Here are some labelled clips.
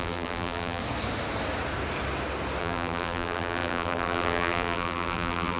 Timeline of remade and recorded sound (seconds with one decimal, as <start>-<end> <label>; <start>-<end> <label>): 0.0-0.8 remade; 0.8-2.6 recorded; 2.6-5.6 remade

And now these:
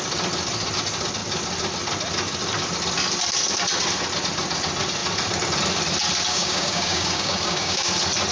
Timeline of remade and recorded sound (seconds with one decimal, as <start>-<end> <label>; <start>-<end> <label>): 0.0-6.3 recorded; 6.3-7.9 remade; 7.9-8.3 recorded

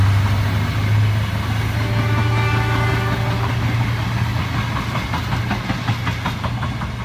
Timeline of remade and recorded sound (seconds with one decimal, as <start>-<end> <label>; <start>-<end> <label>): 0.0-7.0 recorded

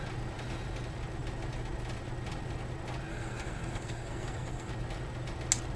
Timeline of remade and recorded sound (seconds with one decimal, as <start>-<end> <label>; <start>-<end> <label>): 0.0-3.1 recorded; 3.1-4.7 remade; 4.7-5.8 recorded